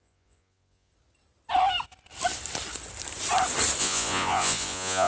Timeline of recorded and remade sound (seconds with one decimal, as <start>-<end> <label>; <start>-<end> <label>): 0.0-0.9 remade; 0.9-3.8 recorded; 3.8-5.1 remade